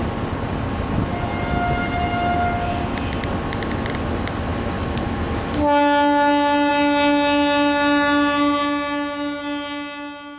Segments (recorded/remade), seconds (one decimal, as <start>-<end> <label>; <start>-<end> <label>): 0.0-10.4 recorded